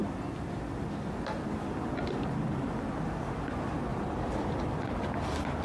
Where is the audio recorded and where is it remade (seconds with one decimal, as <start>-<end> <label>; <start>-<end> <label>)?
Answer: 0.0-3.9 recorded; 3.9-4.5 remade; 4.5-5.6 recorded